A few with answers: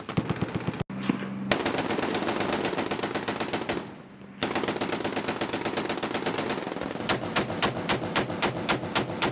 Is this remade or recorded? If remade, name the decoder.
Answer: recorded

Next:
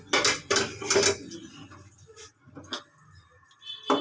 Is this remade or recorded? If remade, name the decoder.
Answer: recorded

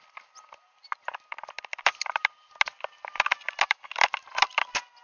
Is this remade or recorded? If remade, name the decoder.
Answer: recorded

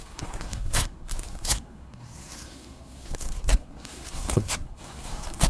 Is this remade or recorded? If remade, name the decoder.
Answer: remade, codec, SNAC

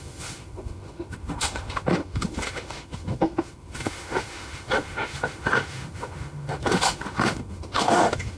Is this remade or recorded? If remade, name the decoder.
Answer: remade, autoencoder, DAC-VAE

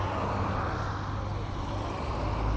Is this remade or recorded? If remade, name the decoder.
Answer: recorded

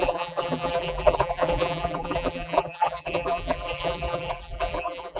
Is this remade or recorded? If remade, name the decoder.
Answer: remade, vocoder, BigVGAN v2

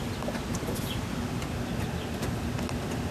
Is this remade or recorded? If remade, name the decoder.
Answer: recorded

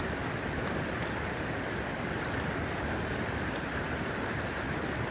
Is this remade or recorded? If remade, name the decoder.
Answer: recorded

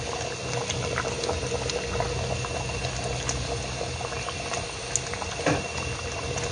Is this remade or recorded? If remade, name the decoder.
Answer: recorded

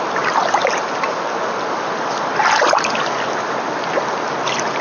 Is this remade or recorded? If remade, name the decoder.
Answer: recorded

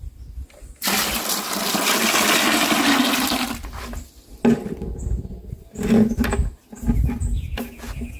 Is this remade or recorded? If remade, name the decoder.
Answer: recorded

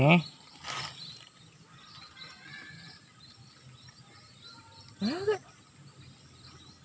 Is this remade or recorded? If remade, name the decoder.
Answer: recorded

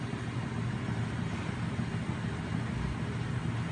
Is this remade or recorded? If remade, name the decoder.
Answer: recorded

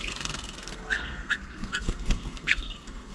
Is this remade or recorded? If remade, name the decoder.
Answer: remade, codec, SNAC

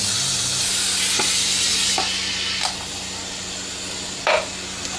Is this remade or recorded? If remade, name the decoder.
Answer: recorded